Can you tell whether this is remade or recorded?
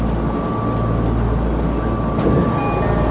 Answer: recorded